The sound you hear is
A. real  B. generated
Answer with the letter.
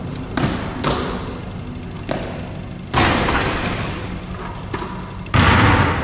A